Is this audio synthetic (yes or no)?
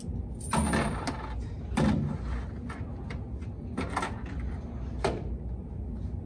no